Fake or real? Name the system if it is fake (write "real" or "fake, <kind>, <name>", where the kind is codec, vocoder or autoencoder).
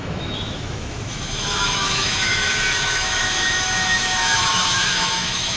fake, autoencoder, DAC-VAE